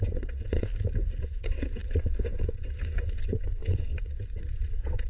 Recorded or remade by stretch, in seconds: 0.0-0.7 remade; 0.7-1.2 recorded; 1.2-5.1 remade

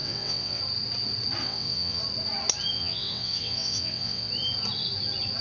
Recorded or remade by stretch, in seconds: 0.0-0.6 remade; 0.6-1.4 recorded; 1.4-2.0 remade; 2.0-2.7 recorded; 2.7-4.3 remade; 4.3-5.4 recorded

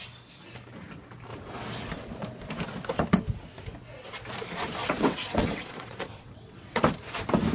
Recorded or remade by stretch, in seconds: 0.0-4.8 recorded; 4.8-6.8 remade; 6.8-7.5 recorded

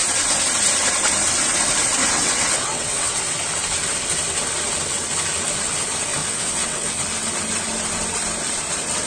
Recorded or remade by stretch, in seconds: 0.0-2.0 recorded; 2.0-3.2 remade; 3.2-6.2 recorded; 6.2-7.0 remade; 7.0-9.1 recorded

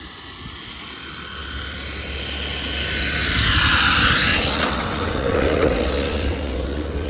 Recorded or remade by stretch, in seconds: 0.0-4.3 recorded; 4.3-7.1 remade

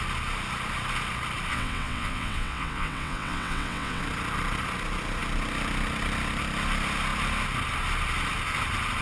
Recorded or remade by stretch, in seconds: 0.0-1.5 recorded; 1.5-4.0 remade; 4.0-9.0 recorded

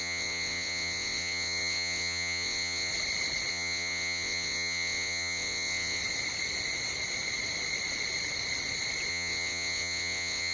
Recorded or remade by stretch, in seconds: 0.0-2.9 remade; 2.9-3.5 recorded; 3.5-6.0 remade; 6.0-9.1 recorded; 9.1-10.5 remade

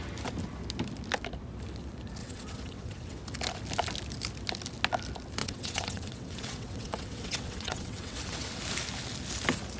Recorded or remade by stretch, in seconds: 0.0-2.2 recorded; 2.2-3.2 remade; 3.2-5.4 recorded; 5.4-8.6 remade; 8.6-9.8 recorded